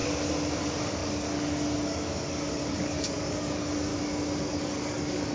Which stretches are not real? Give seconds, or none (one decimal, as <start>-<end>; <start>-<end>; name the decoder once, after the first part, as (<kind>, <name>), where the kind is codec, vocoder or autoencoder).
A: 0.6-3.9 (codec, DAC); 4.4-5.3